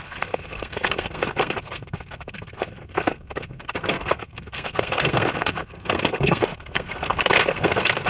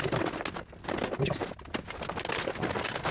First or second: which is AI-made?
first